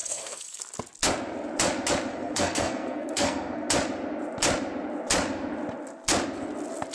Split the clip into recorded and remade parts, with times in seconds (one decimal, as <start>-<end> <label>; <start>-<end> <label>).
0.0-0.6 remade; 0.6-2.1 recorded; 2.1-3.7 remade; 3.7-6.9 recorded